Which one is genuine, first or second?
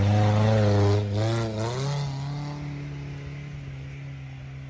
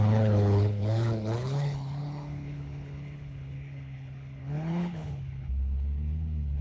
first